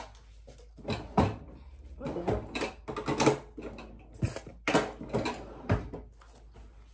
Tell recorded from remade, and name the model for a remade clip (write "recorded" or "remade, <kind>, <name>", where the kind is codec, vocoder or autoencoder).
recorded